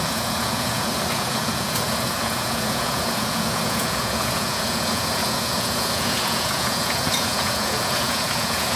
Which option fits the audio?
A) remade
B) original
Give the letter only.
A